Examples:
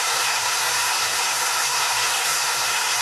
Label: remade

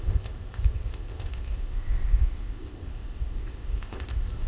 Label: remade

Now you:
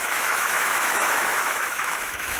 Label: remade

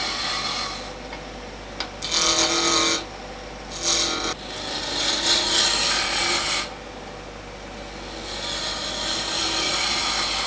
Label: recorded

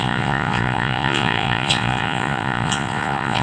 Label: remade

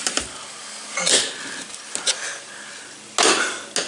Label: recorded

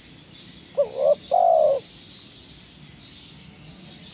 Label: recorded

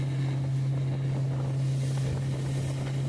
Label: recorded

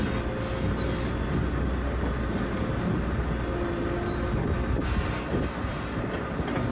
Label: recorded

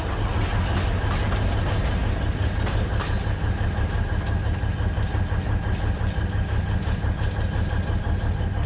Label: recorded